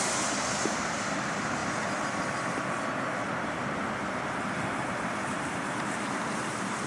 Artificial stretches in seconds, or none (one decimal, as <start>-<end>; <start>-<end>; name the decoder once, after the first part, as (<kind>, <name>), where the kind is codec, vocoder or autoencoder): 0.0-1.6 (vocoder, BigVGAN v2); 4.9-6.9